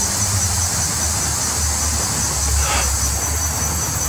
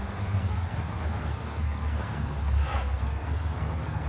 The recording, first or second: first